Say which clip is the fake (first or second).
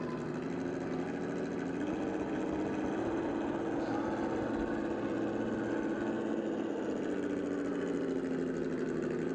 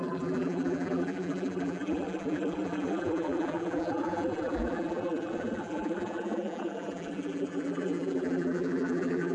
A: second